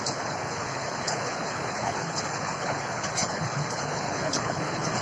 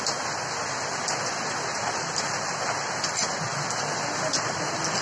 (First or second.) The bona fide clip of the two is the second